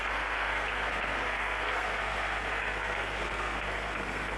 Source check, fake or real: fake